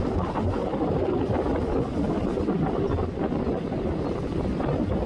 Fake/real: real